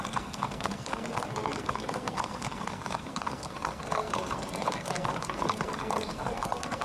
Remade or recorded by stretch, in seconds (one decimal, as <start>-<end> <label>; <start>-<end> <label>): 0.0-6.8 remade